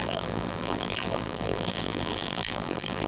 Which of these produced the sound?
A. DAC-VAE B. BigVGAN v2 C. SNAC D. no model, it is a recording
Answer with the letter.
B